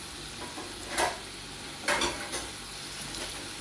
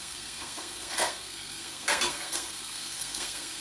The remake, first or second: second